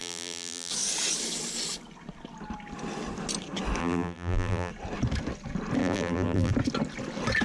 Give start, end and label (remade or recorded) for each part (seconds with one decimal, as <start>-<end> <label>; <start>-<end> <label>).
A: 0.0-0.7 remade; 0.7-3.8 recorded; 3.8-4.7 remade; 4.7-5.8 recorded; 5.8-6.5 remade; 6.5-7.4 recorded